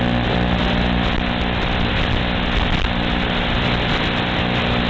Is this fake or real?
real